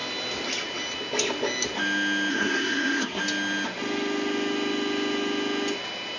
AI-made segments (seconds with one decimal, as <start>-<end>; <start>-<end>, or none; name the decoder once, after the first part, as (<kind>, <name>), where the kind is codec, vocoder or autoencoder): 2.3-3.2 (codec, SNAC)